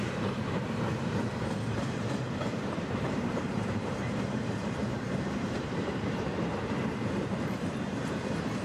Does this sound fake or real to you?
fake